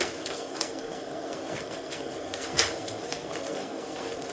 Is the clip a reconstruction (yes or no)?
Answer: yes